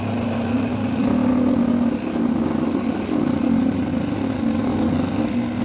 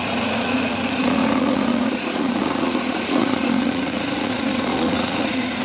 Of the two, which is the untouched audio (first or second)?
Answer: first